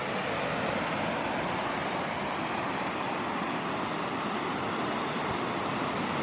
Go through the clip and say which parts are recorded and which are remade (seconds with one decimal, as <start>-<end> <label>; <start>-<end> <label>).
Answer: 0.0-6.2 recorded